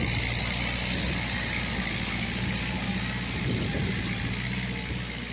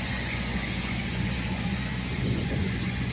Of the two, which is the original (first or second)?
first